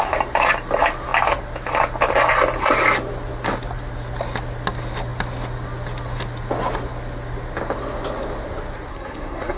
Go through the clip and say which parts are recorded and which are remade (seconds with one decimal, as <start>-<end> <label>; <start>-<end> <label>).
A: 0.0-8.9 recorded; 8.9-9.6 remade